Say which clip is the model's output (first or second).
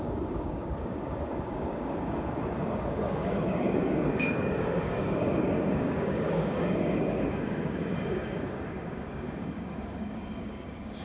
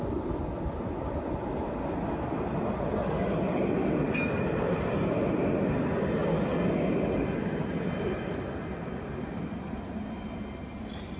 first